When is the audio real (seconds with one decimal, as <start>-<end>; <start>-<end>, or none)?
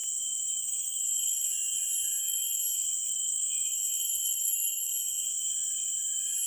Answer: 0.0-0.6; 1.5-2.2; 2.6-3.1; 4.9-6.5